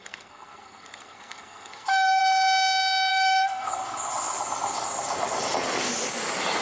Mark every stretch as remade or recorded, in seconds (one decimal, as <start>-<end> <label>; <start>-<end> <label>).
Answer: 0.0-2.2 remade; 2.2-3.1 recorded; 3.1-3.8 remade; 3.8-6.6 recorded